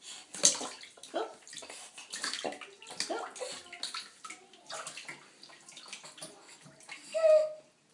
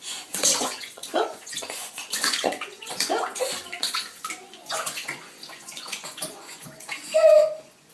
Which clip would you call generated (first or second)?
second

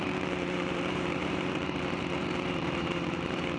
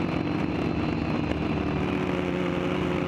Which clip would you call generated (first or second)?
first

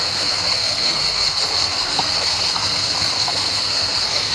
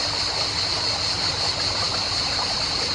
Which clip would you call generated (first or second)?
first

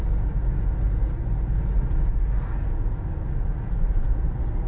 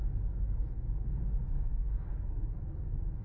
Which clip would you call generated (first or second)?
second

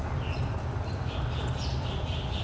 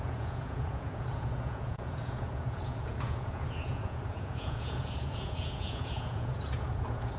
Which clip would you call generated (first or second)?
second